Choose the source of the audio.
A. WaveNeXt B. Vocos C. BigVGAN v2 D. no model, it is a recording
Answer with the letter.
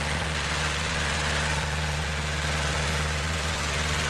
B